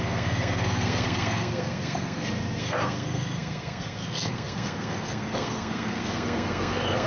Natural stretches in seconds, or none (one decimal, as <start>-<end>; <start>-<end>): none